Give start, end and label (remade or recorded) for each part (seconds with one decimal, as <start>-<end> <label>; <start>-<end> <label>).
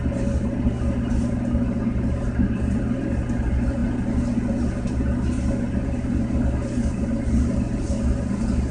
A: 0.0-8.7 recorded